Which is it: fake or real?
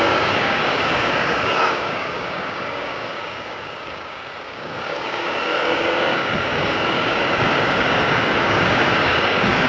fake